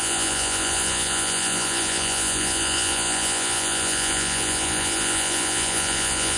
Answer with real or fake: fake